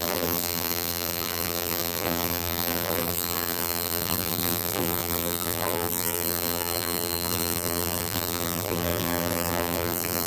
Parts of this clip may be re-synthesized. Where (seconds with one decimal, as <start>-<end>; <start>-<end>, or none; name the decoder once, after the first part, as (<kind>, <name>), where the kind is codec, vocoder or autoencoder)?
0.0-10.3 (vocoder, BigVGAN v2)